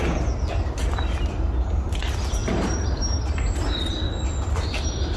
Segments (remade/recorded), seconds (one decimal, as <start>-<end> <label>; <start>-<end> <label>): 0.0-0.8 recorded; 0.8-2.0 remade; 2.0-2.4 recorded; 2.4-3.8 remade; 3.8-5.2 recorded